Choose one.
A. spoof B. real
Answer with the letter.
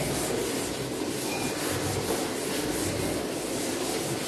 A